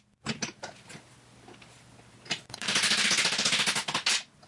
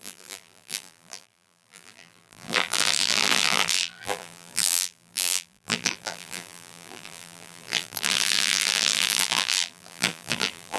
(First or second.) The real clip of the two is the first